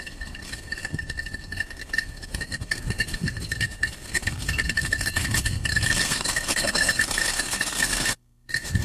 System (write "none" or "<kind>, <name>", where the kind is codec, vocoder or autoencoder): codec, SNAC